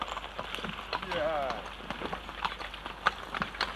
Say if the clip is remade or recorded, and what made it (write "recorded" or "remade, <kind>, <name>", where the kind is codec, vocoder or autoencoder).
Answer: recorded